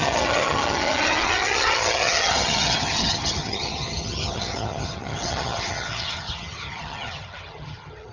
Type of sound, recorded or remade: remade